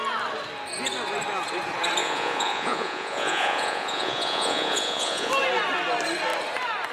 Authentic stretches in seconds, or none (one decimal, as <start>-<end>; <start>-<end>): 0.0-2.0; 5.3-6.9